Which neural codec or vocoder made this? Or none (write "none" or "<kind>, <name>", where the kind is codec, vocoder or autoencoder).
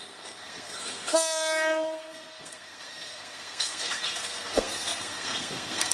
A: codec, SNAC